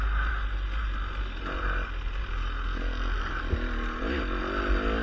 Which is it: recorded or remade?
recorded